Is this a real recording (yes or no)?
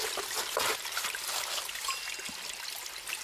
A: yes